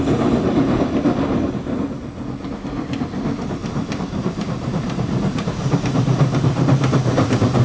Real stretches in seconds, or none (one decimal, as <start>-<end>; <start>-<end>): 0.0-3.6; 5.8-7.6